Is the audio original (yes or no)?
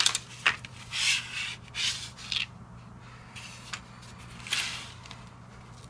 yes